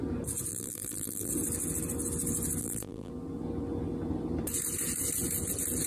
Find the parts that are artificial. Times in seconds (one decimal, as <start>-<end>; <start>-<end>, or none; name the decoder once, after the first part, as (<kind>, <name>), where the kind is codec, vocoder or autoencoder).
0.5-1.3 (vocoder, BigVGAN v2); 2.6-3.1